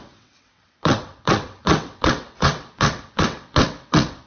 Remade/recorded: remade